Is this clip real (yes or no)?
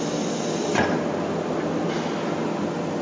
yes